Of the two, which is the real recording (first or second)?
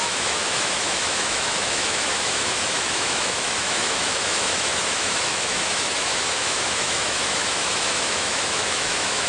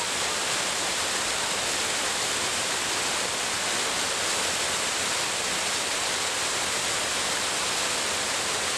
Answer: second